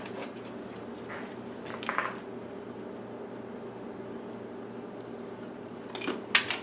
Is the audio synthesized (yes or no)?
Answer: no